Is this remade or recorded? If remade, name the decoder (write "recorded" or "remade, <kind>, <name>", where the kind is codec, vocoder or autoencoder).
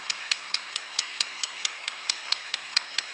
remade, codec, SNAC